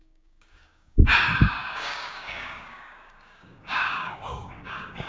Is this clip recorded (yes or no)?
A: no